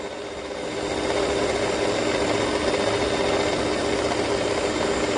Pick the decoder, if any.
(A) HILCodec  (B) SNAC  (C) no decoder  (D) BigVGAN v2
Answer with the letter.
C